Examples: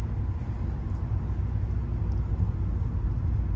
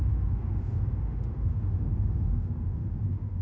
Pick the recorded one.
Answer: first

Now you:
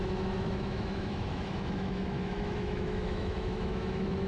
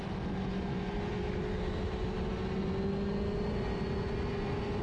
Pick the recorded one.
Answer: second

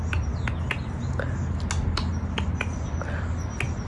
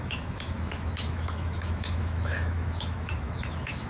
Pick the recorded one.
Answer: first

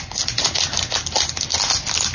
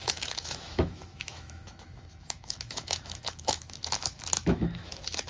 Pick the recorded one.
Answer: first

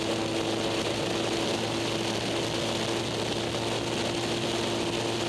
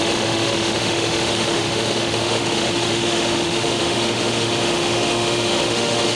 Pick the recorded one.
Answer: first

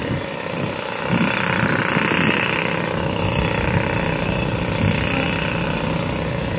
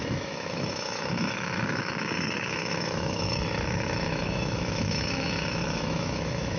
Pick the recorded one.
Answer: first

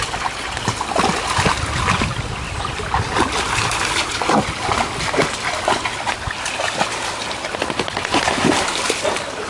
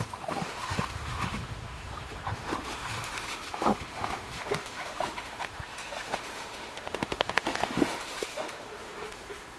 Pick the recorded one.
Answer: first